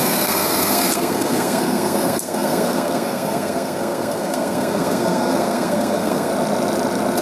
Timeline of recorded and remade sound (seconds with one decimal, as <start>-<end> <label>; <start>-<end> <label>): 0.0-6.3 remade; 6.3-7.2 recorded